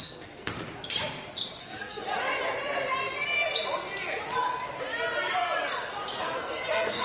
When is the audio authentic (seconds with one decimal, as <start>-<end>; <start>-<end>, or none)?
0.5-1.6; 2.0-6.2